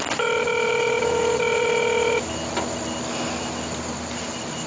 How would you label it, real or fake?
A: real